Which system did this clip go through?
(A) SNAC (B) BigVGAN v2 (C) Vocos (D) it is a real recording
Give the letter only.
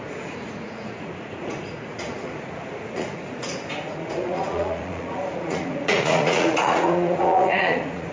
C